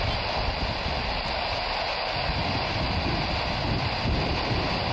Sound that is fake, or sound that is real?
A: real